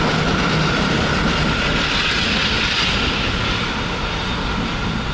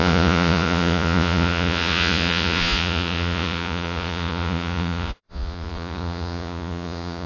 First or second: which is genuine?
first